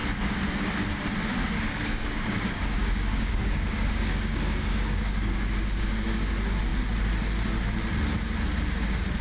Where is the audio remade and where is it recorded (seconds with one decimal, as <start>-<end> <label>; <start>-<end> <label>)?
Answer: 0.0-1.4 recorded; 1.4-6.0 remade; 6.0-9.2 recorded